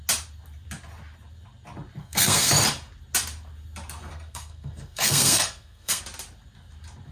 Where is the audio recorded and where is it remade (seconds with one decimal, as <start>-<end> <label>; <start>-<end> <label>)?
0.0-2.0 recorded; 2.0-2.5 remade; 2.5-4.1 recorded; 4.1-6.0 remade; 6.0-7.1 recorded